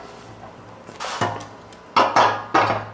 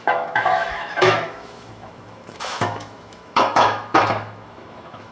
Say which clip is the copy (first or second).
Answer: second